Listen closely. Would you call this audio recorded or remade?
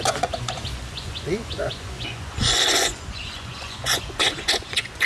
remade